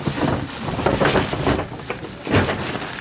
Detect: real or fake real